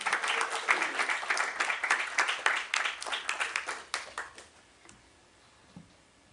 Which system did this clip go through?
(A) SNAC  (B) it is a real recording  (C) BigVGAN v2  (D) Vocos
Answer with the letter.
B